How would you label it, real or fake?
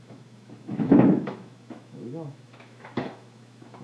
fake